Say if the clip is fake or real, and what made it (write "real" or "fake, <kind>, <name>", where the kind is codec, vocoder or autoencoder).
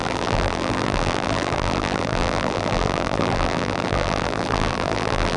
fake, vocoder, BigVGAN v2